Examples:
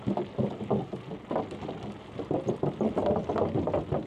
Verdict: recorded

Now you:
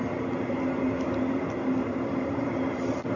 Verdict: recorded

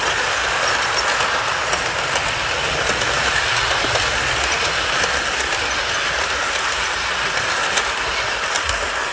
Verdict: recorded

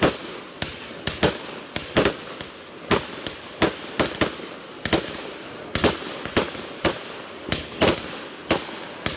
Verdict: recorded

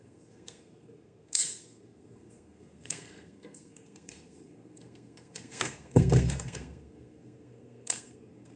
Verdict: remade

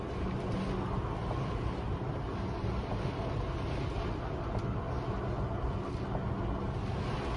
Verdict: recorded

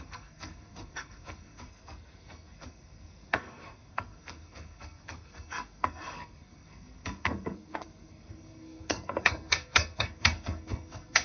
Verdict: remade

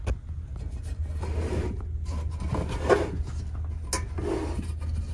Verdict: recorded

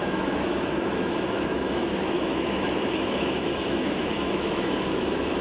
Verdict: remade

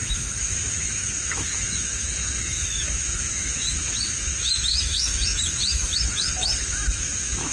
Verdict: remade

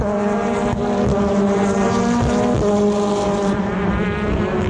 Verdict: recorded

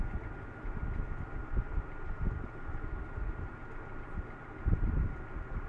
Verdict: recorded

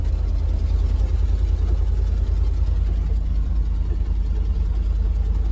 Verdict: recorded